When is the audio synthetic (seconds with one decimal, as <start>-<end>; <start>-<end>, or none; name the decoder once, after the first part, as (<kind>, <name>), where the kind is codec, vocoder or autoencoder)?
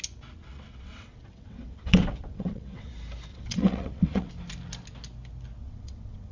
0.5-2.9 (vocoder, WaveNeXt); 3.3-4.3; 5.6-6.3